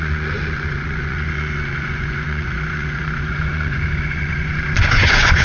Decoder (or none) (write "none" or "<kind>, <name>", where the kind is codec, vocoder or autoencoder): vocoder, Vocos